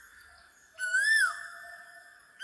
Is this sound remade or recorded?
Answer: remade